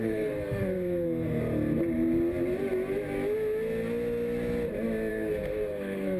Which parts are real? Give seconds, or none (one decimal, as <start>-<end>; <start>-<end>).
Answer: 1.4-5.1